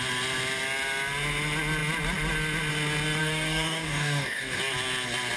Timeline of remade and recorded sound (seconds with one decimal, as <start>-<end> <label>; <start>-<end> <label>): 0.0-3.2 recorded; 3.2-4.6 remade; 4.6-5.4 recorded